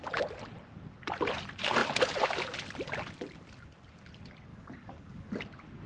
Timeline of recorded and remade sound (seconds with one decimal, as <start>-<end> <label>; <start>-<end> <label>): 0.0-4.5 recorded; 4.5-5.3 remade; 5.3-5.9 recorded